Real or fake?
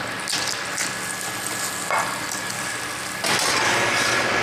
real